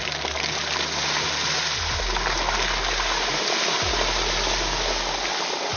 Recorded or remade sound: recorded